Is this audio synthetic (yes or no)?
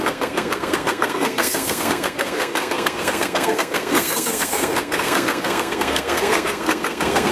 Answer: yes